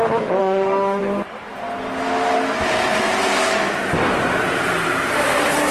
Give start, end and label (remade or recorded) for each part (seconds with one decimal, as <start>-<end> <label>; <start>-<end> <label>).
0.0-0.4 recorded; 0.4-1.0 remade; 1.0-5.7 recorded